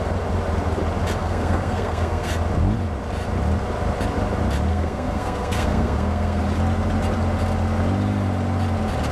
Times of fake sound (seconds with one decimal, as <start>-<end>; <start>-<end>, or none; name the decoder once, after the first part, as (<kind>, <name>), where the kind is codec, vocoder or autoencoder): 1.2-2.3 (codec, SNAC); 4.7-6.4